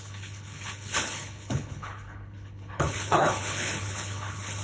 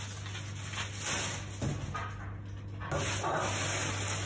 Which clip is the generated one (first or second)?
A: first